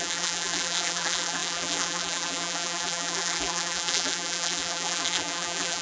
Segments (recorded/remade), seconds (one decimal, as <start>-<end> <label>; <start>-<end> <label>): 0.0-5.8 remade